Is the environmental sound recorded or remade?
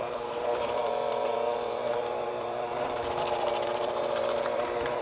remade